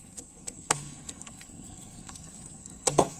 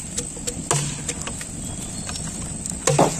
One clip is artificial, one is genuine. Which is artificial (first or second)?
first